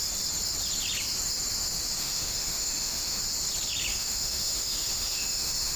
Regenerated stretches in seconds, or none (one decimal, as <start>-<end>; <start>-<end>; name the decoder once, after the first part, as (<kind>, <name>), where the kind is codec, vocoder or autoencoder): 2.0-3.2 (autoencoder, DAC-VAE); 3.9-5.8